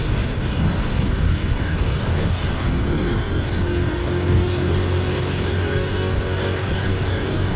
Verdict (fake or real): fake